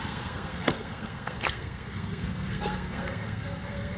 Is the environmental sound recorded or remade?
remade